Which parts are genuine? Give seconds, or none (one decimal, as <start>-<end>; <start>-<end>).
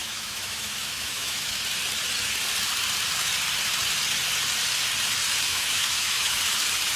1.6-5.5; 6.4-7.0